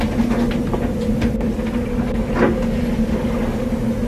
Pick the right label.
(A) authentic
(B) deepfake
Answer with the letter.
A